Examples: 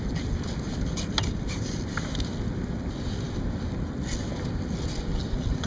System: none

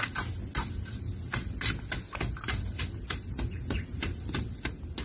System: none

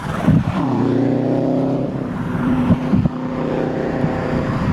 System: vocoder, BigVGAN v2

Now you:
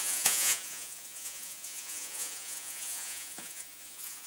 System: vocoder, Vocos